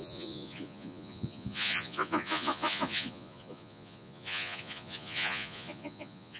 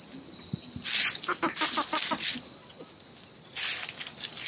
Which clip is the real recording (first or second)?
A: second